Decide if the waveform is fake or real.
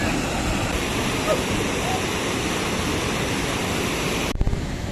fake